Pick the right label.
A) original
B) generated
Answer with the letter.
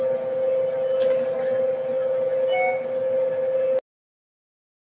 A